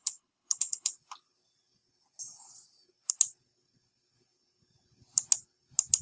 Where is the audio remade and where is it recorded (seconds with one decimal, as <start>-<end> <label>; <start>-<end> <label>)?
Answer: 0.0-0.9 remade; 0.9-6.0 recorded